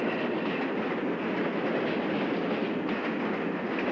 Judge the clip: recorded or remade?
recorded